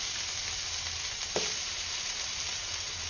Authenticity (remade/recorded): recorded